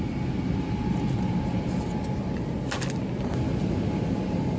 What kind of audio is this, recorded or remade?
recorded